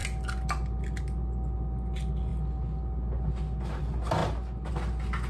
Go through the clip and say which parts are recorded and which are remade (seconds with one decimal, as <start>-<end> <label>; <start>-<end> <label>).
0.0-5.3 recorded